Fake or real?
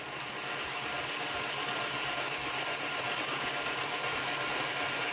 real